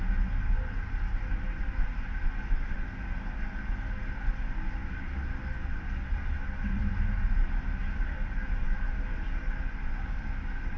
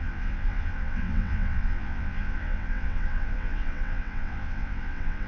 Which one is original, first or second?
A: first